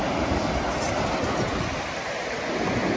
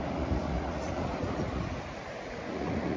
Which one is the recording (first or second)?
first